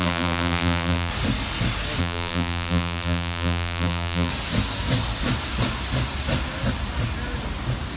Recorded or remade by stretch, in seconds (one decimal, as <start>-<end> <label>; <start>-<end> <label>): 0.0-1.1 remade; 1.1-2.0 recorded; 2.0-4.3 remade; 4.3-8.0 recorded